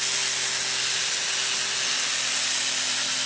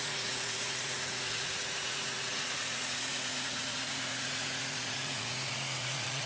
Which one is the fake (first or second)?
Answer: second